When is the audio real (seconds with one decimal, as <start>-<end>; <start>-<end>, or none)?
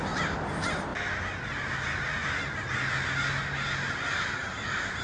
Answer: 0.0-5.0